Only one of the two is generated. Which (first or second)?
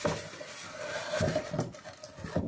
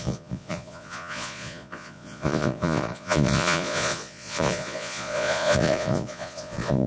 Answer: second